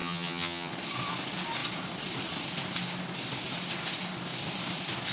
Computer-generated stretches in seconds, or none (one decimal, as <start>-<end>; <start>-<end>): 0.0-0.7